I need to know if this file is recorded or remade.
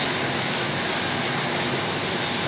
recorded